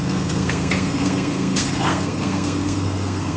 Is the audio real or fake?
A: fake